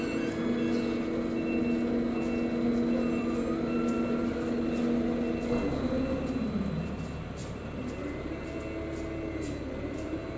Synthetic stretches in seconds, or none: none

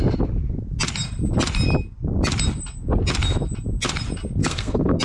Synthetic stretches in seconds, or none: 4.4-5.0 (codec, SNAC)